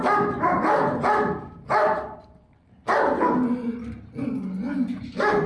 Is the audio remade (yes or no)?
no